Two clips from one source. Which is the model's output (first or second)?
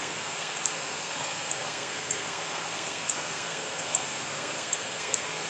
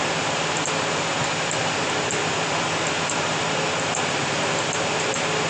first